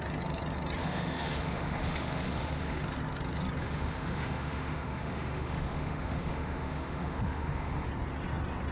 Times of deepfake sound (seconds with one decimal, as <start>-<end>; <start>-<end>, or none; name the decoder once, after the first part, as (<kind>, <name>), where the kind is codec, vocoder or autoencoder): 0.8-2.8 (autoencoder, DAC-VAE); 3.6-7.9